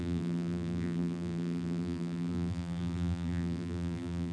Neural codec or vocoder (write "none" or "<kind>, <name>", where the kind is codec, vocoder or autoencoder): vocoder, BigVGAN v2